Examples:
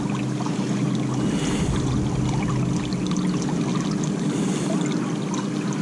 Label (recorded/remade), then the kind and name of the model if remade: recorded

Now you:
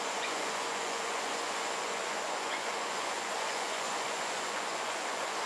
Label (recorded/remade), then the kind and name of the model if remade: remade, vocoder, Vocos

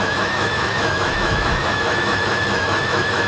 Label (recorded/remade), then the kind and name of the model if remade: remade, autoencoder, DAC-VAE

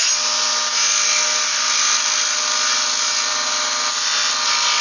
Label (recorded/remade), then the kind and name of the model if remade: recorded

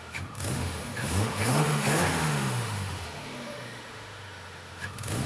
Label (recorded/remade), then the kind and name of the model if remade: remade, autoencoder, DAC-VAE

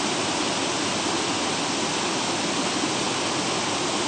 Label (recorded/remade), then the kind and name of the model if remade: recorded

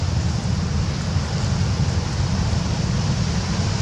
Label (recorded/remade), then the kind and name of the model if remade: recorded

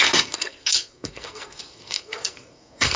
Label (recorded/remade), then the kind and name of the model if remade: remade, codec, SNAC